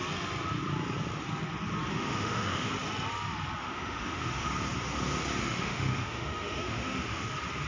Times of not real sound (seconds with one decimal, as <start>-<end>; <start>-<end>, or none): 1.9-2.7; 3.6-4.5; 5.4-7.3